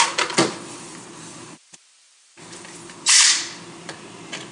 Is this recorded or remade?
remade